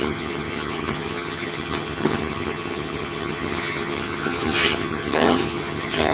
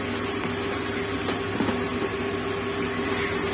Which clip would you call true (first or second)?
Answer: second